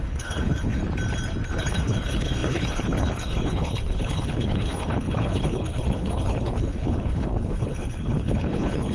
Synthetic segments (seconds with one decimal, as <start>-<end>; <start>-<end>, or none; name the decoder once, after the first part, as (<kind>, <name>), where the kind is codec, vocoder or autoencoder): 0.0-0.8 (codec, HILCodec); 1.6-8.9